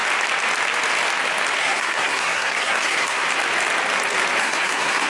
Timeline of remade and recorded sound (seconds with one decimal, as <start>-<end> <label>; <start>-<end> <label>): 0.0-1.6 recorded; 1.6-3.2 remade; 3.2-4.4 recorded; 4.4-5.1 remade